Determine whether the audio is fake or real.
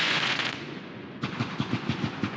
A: fake